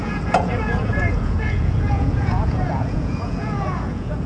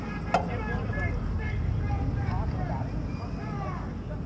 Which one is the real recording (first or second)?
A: second